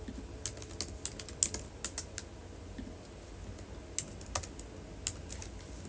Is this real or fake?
real